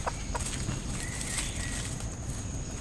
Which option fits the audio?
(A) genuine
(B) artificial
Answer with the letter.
A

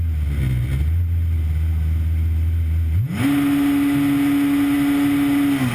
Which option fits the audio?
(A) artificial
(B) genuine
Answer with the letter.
B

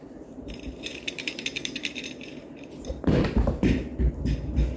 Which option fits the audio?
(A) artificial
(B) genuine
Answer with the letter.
A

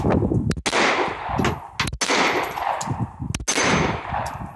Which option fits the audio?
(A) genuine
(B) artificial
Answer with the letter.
A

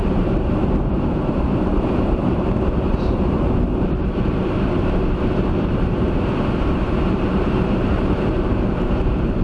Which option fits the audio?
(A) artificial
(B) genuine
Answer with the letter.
A